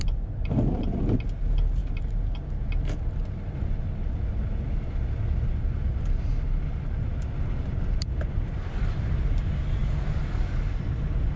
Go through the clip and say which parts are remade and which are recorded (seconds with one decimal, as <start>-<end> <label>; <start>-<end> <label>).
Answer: 0.0-11.4 recorded

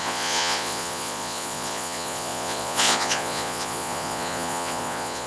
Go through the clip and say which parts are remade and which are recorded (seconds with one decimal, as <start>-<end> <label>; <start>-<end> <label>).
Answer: 0.0-5.3 remade

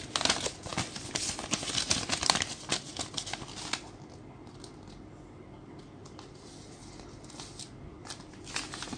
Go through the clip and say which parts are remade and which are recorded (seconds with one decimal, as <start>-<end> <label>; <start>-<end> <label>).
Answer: 0.0-9.0 recorded

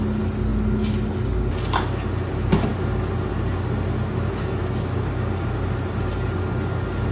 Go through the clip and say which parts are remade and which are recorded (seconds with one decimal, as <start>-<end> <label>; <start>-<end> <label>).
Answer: 0.0-7.1 recorded

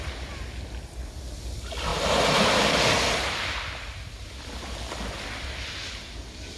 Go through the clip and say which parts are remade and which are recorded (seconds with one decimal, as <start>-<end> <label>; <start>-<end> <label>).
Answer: 0.0-6.6 recorded

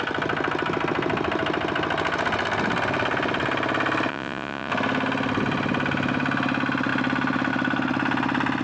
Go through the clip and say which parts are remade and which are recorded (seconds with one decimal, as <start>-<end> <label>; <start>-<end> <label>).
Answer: 0.0-4.1 recorded; 4.1-4.7 remade; 4.7-8.6 recorded